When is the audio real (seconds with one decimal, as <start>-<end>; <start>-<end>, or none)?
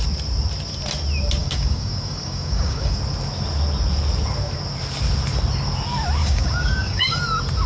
0.0-1.4; 3.0-6.2; 7.2-7.7